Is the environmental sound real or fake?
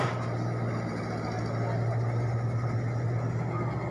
real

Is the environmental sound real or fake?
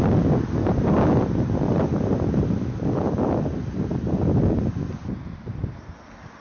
real